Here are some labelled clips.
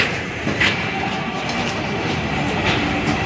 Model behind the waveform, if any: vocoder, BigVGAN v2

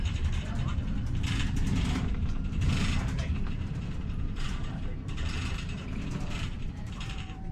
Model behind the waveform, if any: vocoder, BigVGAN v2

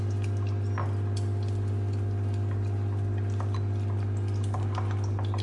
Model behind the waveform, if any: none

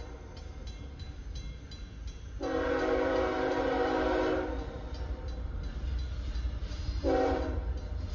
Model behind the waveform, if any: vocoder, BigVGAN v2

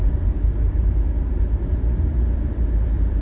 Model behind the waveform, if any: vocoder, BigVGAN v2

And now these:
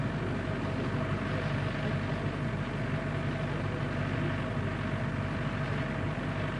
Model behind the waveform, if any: none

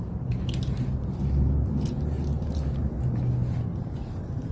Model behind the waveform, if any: none